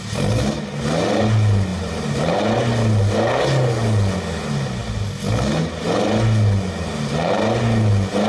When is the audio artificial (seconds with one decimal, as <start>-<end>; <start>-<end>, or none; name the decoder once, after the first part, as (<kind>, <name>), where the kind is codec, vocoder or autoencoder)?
1.7-2.4 (vocoder, BigVGAN v2)